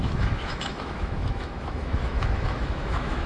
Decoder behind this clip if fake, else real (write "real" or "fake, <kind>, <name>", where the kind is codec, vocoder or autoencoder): fake, autoencoder, DAC-VAE